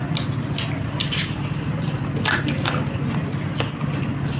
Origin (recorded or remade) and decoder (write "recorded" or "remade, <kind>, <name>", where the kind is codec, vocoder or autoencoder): recorded